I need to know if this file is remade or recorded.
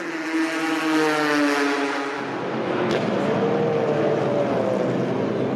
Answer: recorded